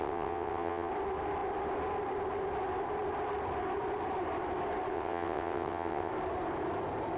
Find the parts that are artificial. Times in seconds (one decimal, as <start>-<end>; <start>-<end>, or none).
0.0-0.9; 4.9-6.1

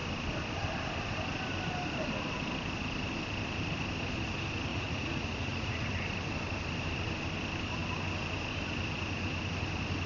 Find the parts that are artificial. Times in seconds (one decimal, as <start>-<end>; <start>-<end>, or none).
4.7-5.9

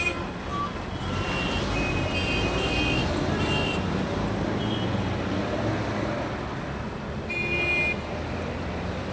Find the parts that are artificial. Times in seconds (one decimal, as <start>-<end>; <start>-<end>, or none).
none